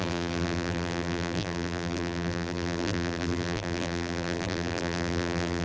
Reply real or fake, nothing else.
fake